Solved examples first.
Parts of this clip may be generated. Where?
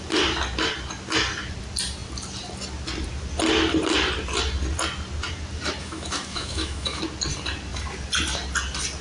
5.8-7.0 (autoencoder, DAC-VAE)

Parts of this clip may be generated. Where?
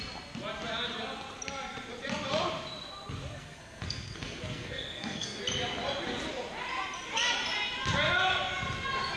3.4-5.4 (codec, SNAC)